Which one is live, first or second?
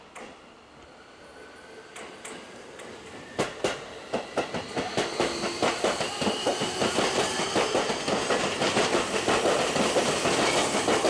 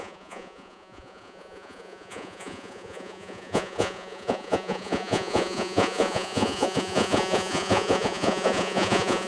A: first